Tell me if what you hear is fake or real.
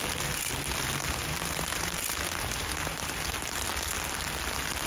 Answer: real